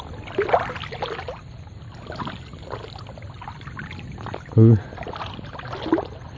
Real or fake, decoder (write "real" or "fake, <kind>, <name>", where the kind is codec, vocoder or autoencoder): real